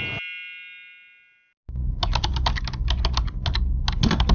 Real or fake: real